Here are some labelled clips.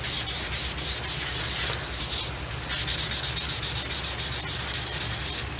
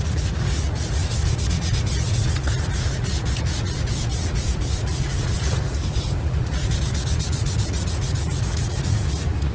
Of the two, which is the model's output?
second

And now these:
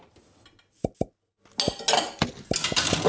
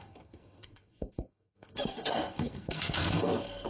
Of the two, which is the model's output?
second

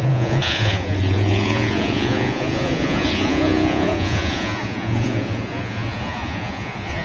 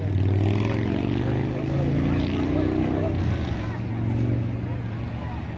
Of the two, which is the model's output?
first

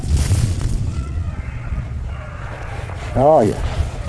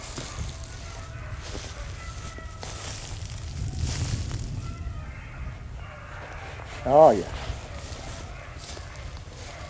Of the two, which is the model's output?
first